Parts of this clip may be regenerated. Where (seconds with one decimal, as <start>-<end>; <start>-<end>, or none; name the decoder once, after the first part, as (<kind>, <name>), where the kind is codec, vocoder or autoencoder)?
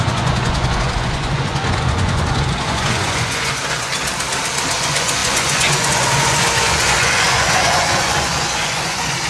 0.0-3.9 (vocoder, Vocos); 4.8-9.3